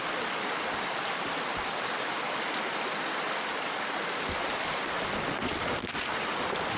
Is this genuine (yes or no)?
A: yes